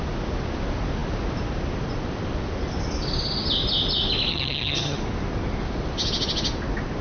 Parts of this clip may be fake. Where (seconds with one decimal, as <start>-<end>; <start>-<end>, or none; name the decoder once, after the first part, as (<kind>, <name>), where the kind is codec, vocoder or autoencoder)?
4.3-5.0 (vocoder, HiFi-GAN)